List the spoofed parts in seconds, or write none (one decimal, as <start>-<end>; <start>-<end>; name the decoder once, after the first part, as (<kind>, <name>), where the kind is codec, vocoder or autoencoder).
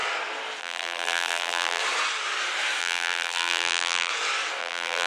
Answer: 0.6-1.8 (vocoder, BigVGAN v2); 2.8-4.1; 4.6-5.1